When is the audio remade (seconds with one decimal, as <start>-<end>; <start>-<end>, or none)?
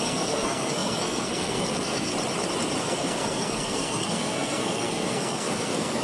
0.0-2.1; 2.8-6.0